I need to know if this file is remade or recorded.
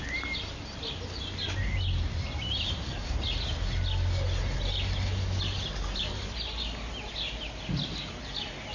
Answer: recorded